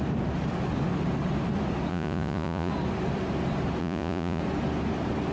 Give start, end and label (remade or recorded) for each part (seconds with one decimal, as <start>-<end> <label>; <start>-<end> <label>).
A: 0.0-1.9 recorded; 1.9-2.7 remade; 2.7-3.8 recorded; 3.8-4.4 remade; 4.4-5.3 recorded